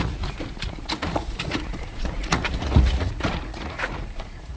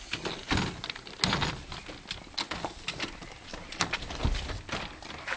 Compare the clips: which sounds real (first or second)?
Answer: second